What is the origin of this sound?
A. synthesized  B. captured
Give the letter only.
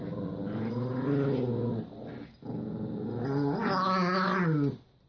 B